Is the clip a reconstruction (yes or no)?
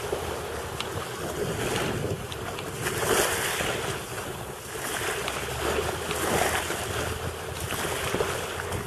no